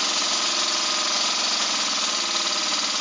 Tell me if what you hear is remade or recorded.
recorded